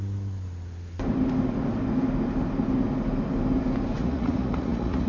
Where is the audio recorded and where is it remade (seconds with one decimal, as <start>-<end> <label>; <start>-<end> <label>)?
0.0-4.0 recorded; 4.0-5.1 remade